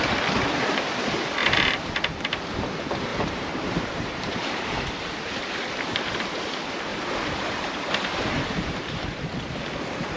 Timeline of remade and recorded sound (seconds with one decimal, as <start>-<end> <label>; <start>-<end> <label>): 0.0-1.4 recorded; 1.4-1.9 remade; 1.9-3.1 recorded; 3.1-6.2 remade; 6.2-6.9 recorded; 6.9-9.0 remade; 9.0-10.2 recorded